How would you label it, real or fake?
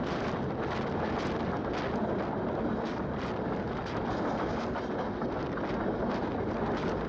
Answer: real